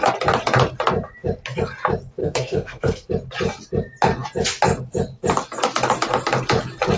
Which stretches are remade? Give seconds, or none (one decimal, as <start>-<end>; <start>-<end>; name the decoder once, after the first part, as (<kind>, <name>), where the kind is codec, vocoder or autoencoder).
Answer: 2.2-3.1 (codec, SNAC)